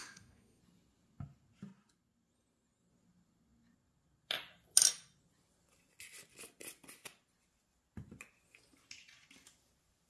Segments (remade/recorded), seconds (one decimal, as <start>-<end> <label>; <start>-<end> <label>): 0.0-0.6 remade; 0.6-10.1 recorded